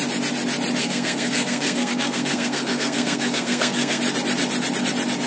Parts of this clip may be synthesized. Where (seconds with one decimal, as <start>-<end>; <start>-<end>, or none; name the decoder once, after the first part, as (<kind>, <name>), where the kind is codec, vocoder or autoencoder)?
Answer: 0.8-4.0 (codec, SNAC)